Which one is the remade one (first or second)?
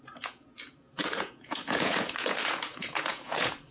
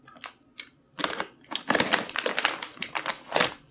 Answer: first